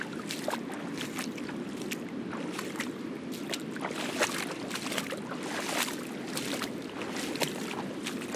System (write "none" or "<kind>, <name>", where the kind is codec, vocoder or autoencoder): none